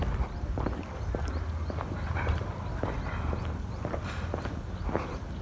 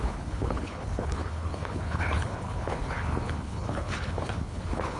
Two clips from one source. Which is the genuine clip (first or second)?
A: first